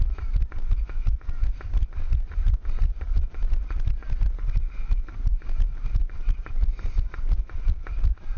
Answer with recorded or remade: recorded